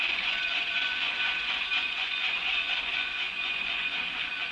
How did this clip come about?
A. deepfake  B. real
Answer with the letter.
A